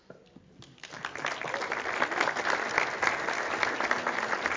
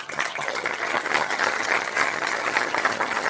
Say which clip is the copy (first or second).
second